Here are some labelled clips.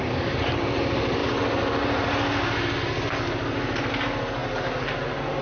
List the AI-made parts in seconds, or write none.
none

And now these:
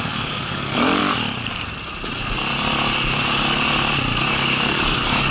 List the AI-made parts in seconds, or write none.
0.0-1.0 (codec, DAC); 4.2-5.3

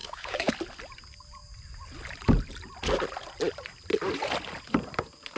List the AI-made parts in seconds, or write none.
0.0-0.5 (codec, DAC)

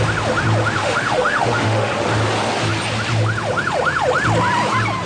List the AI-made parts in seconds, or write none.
0.8-1.9 (autoencoder, DAC-VAE)

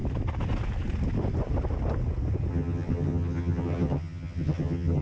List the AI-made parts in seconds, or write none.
2.5-5.0 (vocoder, HiFi-GAN)